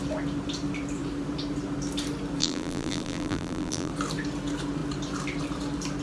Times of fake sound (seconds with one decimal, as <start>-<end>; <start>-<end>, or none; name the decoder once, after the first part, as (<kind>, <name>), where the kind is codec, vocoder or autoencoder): 2.4-3.9 (vocoder, BigVGAN v2)